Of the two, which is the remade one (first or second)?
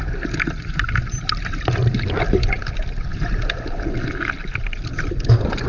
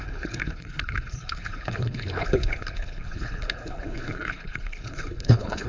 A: second